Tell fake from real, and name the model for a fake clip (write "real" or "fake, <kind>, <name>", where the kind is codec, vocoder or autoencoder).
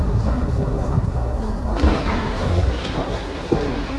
fake, codec, SNAC